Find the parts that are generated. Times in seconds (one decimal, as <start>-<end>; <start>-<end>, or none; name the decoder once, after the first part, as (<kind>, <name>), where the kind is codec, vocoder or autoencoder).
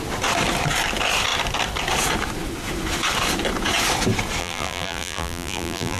4.4-6.0 (vocoder, BigVGAN v2)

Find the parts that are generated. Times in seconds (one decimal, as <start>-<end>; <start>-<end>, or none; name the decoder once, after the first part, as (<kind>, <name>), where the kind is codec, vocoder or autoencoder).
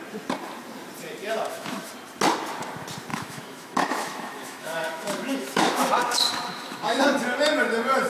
1.2-1.9 (autoencoder, DAC-VAE); 3.1-7.0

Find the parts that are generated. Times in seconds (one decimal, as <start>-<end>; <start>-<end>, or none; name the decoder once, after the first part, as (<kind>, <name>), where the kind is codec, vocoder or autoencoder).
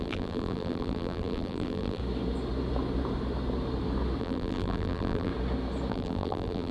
0.0-2.0 (vocoder, BigVGAN v2); 4.2-5.3; 5.9-6.7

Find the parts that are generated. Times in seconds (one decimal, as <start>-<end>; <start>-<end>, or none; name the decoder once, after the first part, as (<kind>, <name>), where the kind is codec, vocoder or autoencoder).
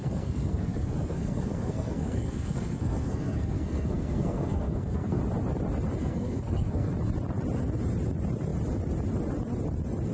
0.0-5.2 (codec, SNAC); 6.0-6.9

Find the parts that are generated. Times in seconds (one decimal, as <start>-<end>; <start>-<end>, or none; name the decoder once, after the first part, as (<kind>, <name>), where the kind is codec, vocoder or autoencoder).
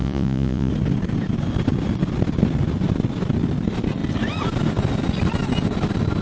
0.0-0.7 (vocoder, Vocos)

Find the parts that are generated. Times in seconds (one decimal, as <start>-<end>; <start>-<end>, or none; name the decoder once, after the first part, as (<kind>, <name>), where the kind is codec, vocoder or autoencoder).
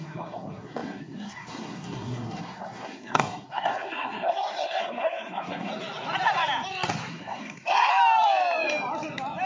0.0-5.7 (codec, SNAC); 7.1-7.9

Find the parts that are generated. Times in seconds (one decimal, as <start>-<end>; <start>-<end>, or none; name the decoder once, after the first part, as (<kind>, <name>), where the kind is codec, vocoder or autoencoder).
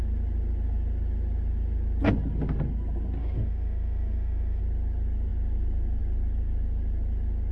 3.2-4.6 (autoencoder, DAC-VAE)